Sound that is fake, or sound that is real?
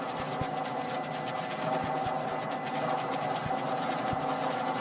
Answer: real